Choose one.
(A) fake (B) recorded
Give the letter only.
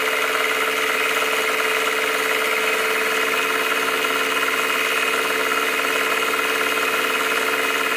B